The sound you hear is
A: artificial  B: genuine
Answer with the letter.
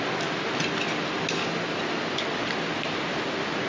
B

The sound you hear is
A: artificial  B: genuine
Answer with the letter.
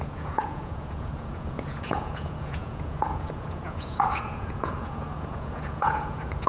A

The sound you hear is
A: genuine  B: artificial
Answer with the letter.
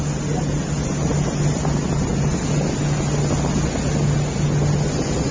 A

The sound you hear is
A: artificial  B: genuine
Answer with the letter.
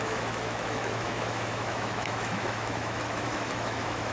A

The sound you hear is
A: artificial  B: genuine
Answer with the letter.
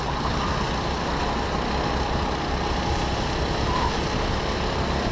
B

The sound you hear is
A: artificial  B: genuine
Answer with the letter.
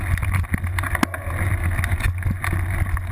B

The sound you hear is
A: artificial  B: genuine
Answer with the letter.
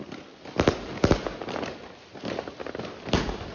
B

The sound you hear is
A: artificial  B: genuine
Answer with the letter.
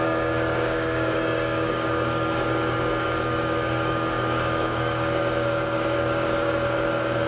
A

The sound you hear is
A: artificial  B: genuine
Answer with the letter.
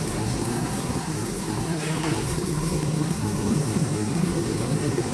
A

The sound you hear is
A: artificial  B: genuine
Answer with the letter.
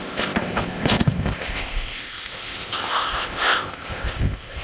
A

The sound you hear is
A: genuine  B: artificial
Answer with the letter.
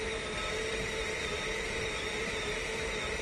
B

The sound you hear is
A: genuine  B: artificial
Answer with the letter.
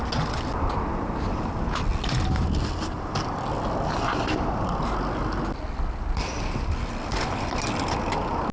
A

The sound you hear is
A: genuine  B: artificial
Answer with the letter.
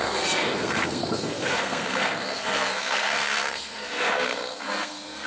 B